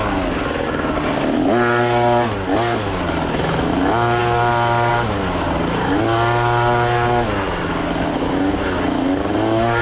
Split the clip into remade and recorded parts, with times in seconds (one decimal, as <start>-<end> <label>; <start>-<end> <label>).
0.0-9.8 recorded